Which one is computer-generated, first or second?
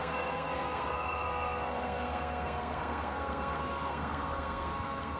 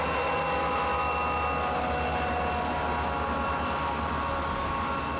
first